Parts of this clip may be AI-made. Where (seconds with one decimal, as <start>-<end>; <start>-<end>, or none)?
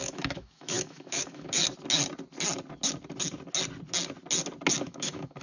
0.0-1.6; 4.8-5.4